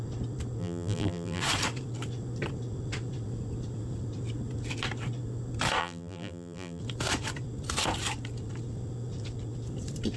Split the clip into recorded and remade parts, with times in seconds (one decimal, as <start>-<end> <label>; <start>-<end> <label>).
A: 0.0-0.6 recorded; 0.6-1.4 remade; 1.4-5.8 recorded; 5.8-6.8 remade; 6.8-10.2 recorded